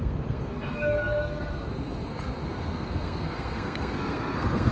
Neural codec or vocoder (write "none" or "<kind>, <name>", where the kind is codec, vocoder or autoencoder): codec, SNAC